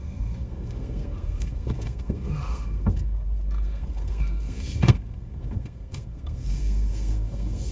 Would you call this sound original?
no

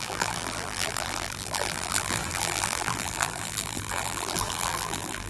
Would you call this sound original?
no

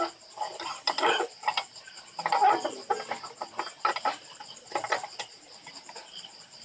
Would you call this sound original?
yes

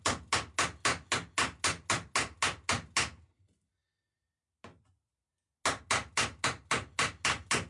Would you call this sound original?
yes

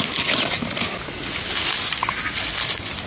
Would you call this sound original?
yes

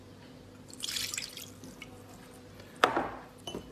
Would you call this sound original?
yes